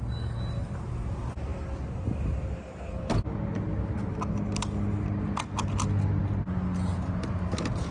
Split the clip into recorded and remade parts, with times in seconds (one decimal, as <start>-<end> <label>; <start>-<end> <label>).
0.0-7.9 recorded